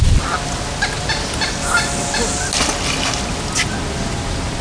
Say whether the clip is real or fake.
real